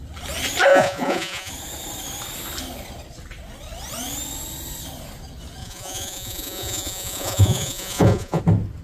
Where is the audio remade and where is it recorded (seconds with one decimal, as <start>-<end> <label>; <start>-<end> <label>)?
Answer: 0.0-0.7 recorded; 0.7-1.5 remade; 1.5-5.6 recorded; 5.6-8.4 remade; 8.4-8.8 recorded